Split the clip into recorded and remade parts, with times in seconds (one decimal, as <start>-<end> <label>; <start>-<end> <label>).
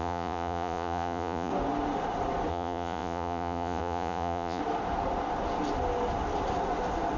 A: 0.0-1.5 remade; 1.5-2.5 recorded; 2.5-4.6 remade; 4.6-7.2 recorded